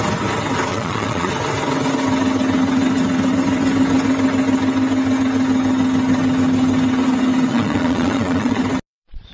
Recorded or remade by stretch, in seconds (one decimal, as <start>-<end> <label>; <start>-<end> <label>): 0.0-0.7 recorded; 0.7-1.3 remade; 1.3-7.5 recorded; 7.5-8.6 remade; 8.6-9.3 recorded